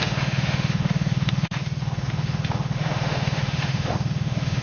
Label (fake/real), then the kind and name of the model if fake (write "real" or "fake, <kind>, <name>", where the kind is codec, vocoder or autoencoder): fake, autoencoder, DAC-VAE